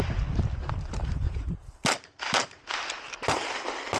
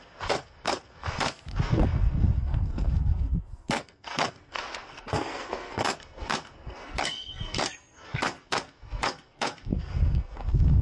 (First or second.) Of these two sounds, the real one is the first